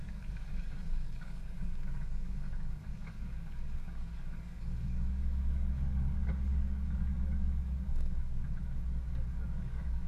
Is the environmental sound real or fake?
fake